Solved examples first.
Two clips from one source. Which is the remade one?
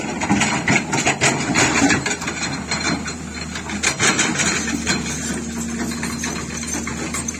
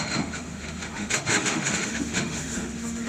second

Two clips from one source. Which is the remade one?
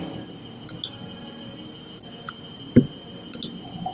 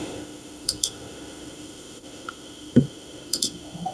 second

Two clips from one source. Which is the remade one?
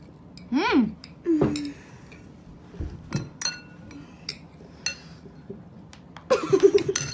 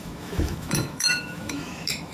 second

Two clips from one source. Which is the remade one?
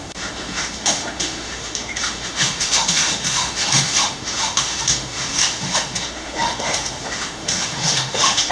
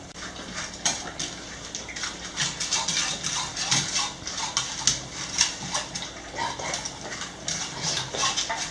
first